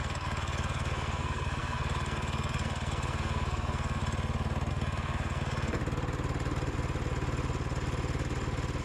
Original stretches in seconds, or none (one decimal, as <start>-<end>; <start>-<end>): 4.0-4.7; 5.8-8.8